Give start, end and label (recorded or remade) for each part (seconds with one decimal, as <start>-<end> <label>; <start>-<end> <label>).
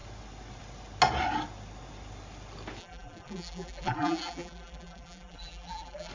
0.0-2.8 recorded; 2.8-6.1 remade